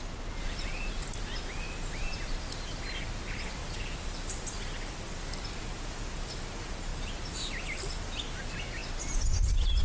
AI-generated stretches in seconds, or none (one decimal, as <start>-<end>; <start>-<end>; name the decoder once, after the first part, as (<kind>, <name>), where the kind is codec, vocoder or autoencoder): 3.6-4.9 (vocoder, BigVGAN v2)